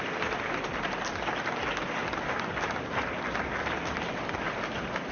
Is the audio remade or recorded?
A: recorded